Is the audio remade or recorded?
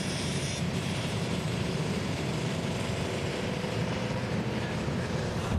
remade